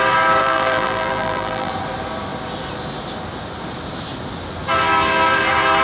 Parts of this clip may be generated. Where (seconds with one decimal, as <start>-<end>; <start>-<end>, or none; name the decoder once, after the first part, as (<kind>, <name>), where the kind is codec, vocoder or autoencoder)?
0.4-1.7 (vocoder, BigVGAN v2)